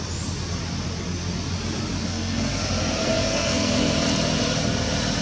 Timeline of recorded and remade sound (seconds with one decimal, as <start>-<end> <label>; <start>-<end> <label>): 0.0-2.0 recorded; 2.0-2.6 remade; 2.6-3.0 recorded; 3.0-3.9 remade; 3.9-5.2 recorded